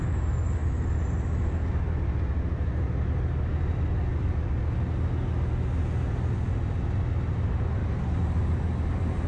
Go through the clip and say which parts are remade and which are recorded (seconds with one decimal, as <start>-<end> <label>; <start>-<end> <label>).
0.0-7.8 recorded; 7.8-8.6 remade; 8.6-9.3 recorded